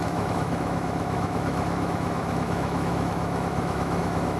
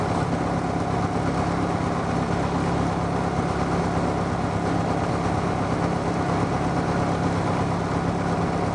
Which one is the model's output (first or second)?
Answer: first